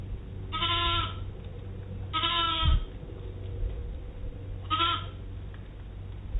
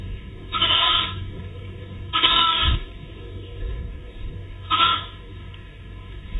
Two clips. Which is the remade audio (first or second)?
second